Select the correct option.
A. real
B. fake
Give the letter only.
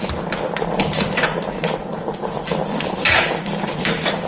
A